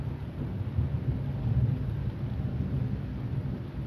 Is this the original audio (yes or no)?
yes